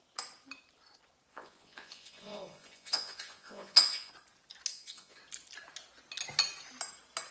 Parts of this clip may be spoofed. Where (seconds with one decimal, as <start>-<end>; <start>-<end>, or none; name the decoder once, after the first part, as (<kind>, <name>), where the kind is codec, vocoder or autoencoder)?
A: 1.3-4.1 (vocoder, Vocos); 4.7-5.2